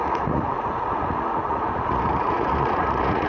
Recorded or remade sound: remade